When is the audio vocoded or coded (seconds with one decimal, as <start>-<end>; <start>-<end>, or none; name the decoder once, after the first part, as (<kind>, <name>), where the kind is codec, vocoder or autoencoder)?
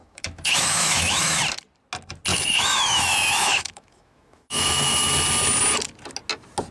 0.0-1.4 (autoencoder, DAC-VAE); 2.3-5.1